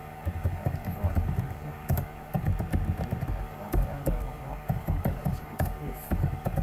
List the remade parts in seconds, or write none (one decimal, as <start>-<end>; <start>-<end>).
0.0-2.5; 3.4-6.6